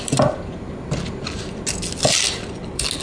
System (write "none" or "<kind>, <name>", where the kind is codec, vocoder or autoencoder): none